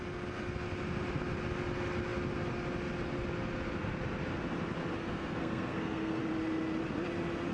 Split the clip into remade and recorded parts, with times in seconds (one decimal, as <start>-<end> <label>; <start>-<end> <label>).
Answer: 0.0-5.0 recorded; 5.0-6.2 remade; 6.2-7.5 recorded